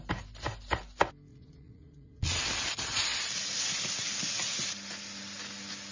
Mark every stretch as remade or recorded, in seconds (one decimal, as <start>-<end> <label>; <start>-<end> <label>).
0.0-1.3 recorded; 1.3-2.4 remade; 2.4-5.9 recorded